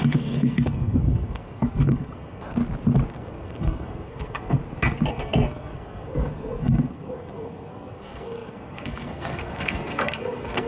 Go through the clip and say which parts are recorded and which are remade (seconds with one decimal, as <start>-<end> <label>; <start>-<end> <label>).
0.0-2.6 remade; 2.6-3.1 recorded; 3.1-4.6 remade; 4.6-5.1 recorded; 5.1-10.7 remade

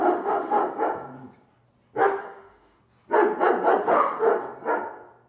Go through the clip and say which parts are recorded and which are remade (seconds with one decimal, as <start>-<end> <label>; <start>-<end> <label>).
0.0-0.6 remade; 0.6-2.2 recorded; 2.2-2.8 remade; 2.8-3.8 recorded; 3.8-4.3 remade; 4.3-5.3 recorded